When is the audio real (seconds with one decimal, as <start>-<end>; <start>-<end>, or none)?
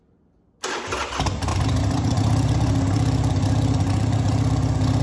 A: 0.0-1.5; 2.7-5.0